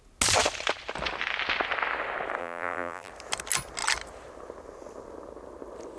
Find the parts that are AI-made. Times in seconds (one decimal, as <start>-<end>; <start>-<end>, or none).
2.4-3.1